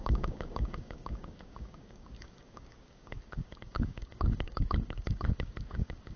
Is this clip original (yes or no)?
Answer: no